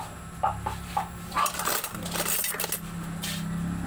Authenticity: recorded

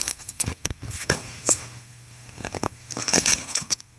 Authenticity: remade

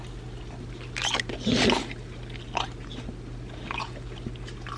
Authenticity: recorded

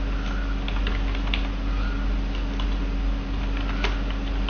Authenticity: recorded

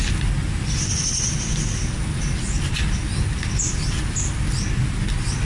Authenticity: recorded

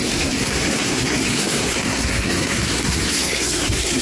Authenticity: remade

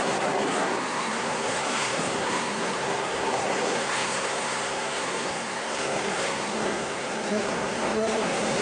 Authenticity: remade